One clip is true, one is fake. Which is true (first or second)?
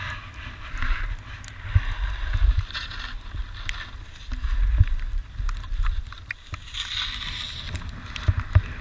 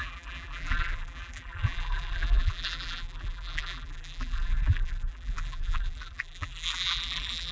first